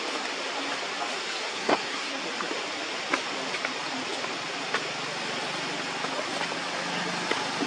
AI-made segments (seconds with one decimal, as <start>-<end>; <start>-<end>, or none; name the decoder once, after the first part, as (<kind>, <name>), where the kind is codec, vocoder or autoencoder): 1.5-2.2 (codec, SNAC)